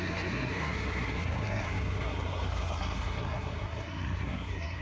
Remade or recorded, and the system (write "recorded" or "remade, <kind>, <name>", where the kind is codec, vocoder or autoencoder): remade, codec, SNAC